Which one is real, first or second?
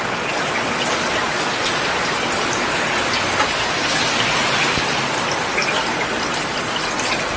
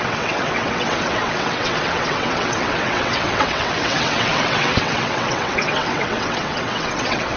first